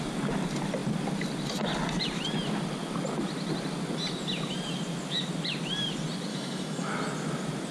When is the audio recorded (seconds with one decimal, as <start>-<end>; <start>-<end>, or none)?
0.0-6.3; 6.9-7.7